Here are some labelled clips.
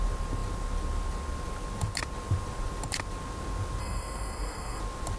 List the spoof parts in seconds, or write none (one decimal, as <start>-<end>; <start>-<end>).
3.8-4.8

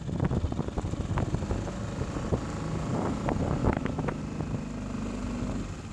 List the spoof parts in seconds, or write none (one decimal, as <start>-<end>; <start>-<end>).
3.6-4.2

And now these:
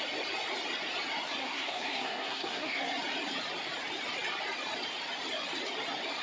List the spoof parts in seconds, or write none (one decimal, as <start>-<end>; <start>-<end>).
1.4-2.8